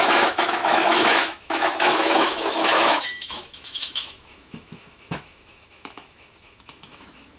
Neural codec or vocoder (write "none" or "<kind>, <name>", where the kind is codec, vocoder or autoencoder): autoencoder, DAC-VAE